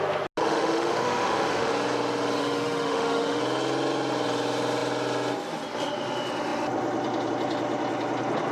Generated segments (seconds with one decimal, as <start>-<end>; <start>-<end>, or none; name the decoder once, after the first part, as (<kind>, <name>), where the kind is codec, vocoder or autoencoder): 0.4-1.7 (autoencoder, DAC-VAE); 2.4-3.4